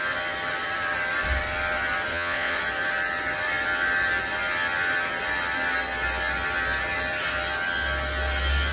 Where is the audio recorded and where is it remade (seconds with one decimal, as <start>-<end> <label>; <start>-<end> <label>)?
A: 0.0-2.1 recorded; 2.1-2.6 remade; 2.6-8.7 recorded